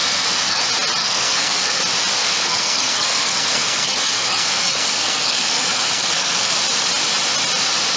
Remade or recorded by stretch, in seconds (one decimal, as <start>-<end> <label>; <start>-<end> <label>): 0.0-0.6 remade; 0.6-1.0 recorded; 1.0-1.8 remade; 1.8-2.2 recorded; 2.2-6.6 remade; 6.6-8.0 recorded